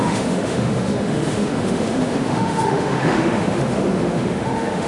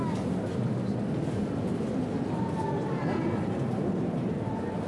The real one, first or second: second